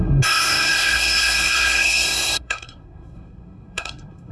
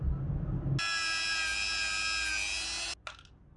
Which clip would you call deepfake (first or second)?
first